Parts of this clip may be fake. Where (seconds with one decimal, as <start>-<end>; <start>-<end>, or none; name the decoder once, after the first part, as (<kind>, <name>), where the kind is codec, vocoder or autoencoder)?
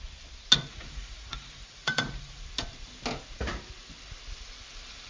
0.7-2.4 (vocoder, Vocos)